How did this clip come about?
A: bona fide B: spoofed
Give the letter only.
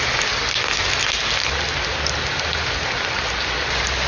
A